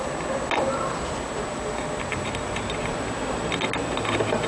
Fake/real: real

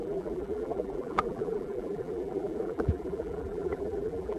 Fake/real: fake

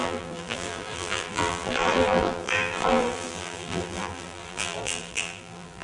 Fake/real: fake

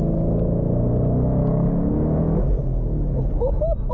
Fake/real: real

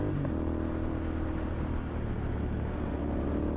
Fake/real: real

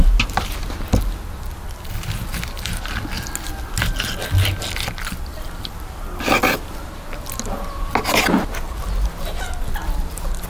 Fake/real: real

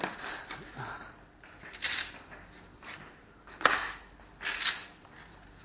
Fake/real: real